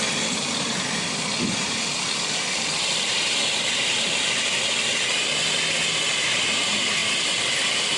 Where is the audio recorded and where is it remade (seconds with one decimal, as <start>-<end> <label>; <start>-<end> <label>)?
0.0-8.0 recorded